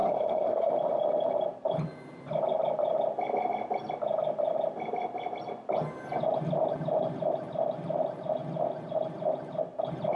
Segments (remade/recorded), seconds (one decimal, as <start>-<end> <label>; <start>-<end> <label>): 0.0-0.7 remade; 0.7-10.2 recorded